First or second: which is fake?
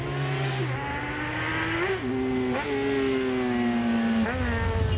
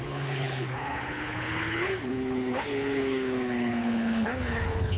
second